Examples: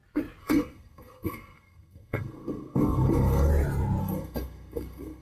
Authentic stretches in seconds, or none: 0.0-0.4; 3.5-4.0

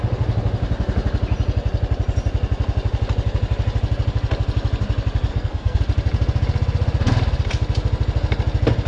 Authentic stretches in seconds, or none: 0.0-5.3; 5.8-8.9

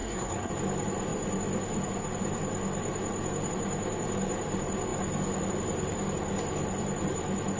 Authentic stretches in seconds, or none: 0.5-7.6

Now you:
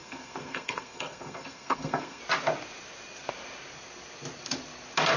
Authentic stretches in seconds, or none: 2.2-5.2